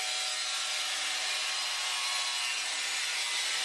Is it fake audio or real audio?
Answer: real